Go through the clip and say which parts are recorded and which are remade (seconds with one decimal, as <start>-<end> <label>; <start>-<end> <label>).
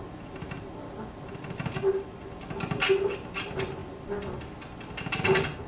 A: 0.0-5.7 recorded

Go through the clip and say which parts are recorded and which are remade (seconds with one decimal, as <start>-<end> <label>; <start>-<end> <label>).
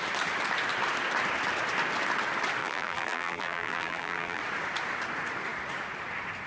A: 0.0-2.6 recorded; 2.6-4.4 remade; 4.4-6.5 recorded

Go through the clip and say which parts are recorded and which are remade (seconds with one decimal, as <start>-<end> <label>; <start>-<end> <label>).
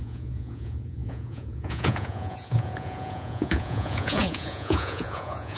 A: 0.0-5.6 remade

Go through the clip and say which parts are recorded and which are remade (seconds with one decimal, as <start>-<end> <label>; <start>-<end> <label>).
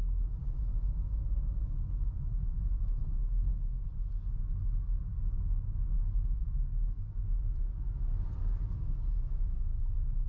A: 0.0-6.0 recorded; 6.0-7.2 remade; 7.2-10.3 recorded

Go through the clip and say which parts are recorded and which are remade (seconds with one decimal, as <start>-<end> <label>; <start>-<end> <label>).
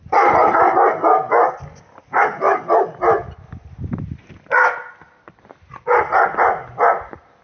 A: 0.0-7.4 recorded